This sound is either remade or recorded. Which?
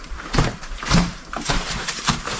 remade